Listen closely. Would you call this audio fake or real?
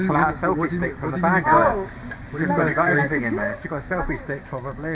fake